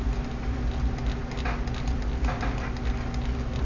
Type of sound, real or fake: real